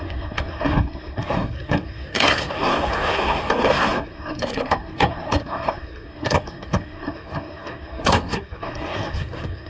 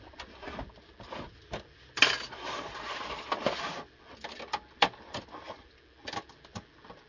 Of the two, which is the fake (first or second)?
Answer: first